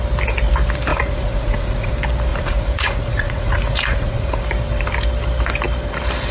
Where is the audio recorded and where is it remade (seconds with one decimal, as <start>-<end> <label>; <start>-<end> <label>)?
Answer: 0.0-0.9 recorded; 0.9-1.9 remade; 1.9-2.3 recorded; 2.3-4.4 remade; 4.4-6.3 recorded